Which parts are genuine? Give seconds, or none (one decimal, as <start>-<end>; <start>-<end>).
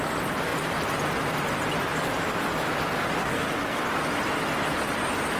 0.0-3.2; 3.8-5.4